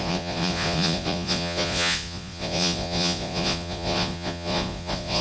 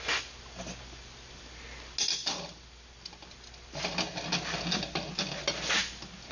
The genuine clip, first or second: second